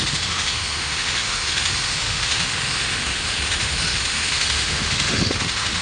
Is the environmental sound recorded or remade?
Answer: remade